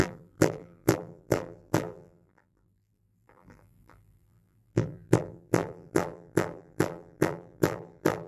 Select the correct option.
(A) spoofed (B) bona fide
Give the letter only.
A